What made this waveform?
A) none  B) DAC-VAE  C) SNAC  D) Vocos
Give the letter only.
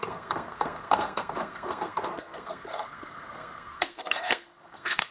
C